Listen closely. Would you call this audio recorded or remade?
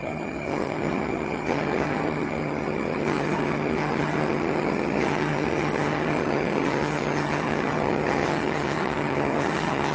remade